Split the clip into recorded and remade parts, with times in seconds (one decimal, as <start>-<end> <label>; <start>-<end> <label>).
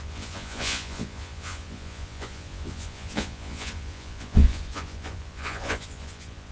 0.0-6.5 remade